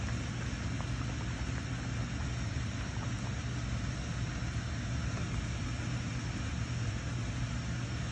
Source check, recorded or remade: recorded